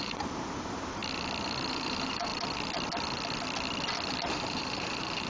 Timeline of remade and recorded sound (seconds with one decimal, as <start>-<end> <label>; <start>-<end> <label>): 0.0-1.0 remade; 1.0-1.7 recorded; 1.7-2.3 remade; 2.3-4.3 recorded; 4.3-5.3 remade